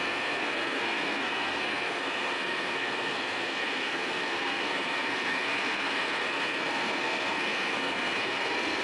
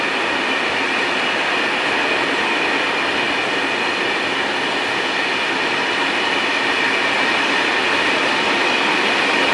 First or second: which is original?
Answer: second